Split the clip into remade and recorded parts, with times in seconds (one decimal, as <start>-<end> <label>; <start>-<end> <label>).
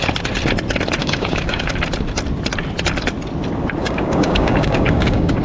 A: 0.0-1.0 recorded; 1.0-1.7 remade; 1.7-3.8 recorded; 3.8-5.4 remade